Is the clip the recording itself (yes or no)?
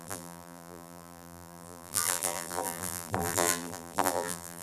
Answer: no